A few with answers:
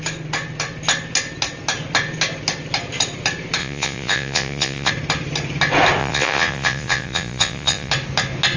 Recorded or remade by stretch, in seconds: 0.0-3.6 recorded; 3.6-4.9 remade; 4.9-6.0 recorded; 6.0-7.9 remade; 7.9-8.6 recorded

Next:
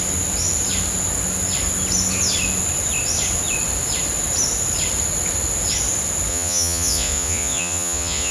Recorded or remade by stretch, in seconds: 0.0-6.3 recorded; 6.3-8.3 remade